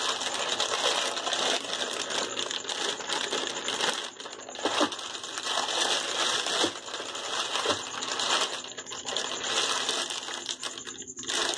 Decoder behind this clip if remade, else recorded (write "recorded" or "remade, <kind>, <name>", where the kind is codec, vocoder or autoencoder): recorded